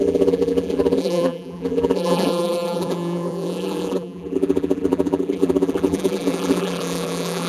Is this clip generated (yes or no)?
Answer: yes